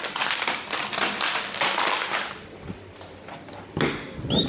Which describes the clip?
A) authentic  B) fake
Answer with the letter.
A